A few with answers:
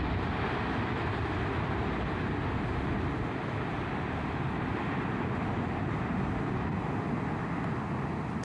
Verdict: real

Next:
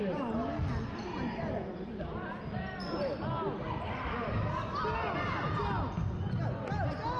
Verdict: real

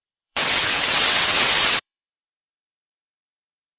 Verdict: fake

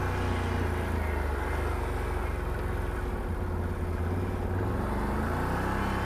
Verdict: real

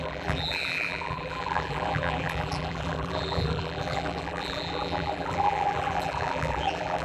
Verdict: fake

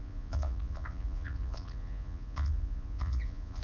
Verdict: fake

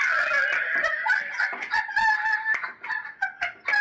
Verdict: real